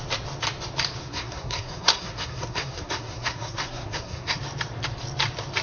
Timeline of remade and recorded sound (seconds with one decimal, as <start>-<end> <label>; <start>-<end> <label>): 0.0-1.0 recorded; 1.0-4.4 remade; 4.4-5.6 recorded